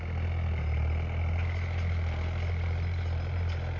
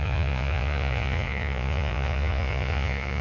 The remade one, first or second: second